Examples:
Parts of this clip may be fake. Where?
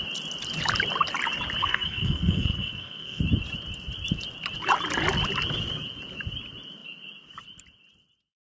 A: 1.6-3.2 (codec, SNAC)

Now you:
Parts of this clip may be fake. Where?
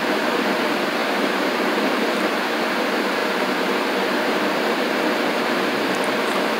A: 0.0-6.6 (vocoder, BigVGAN v2)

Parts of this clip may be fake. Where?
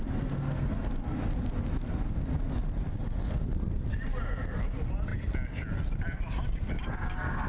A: none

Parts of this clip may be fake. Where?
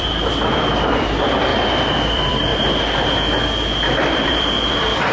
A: 0.0-1.5 (vocoder, BigVGAN v2); 2.1-2.5; 4.1-5.1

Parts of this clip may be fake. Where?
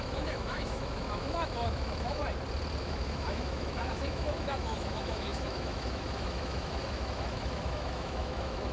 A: 0.0-2.2 (autoencoder, DAC-VAE); 2.8-8.7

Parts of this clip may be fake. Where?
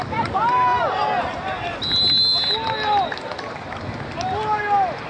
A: 0.7-1.3 (vocoder, BigVGAN v2)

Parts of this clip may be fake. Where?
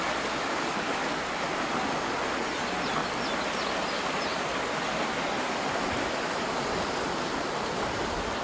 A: none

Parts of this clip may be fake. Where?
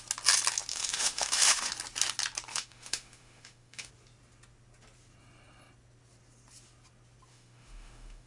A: 0.7-1.7 (autoencoder, DAC-VAE); 2.5-3.9; 7.3-8.3